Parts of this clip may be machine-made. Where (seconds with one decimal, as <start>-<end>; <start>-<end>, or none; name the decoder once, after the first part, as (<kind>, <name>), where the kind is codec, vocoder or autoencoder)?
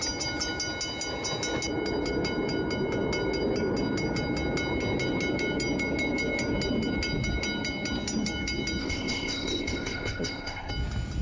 8.8-10.7 (codec, ZipCodec)